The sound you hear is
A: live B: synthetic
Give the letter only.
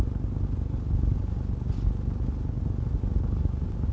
A